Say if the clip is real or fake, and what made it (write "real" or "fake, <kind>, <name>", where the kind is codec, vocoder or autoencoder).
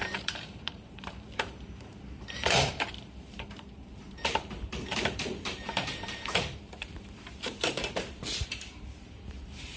fake, vocoder, BigVGAN v2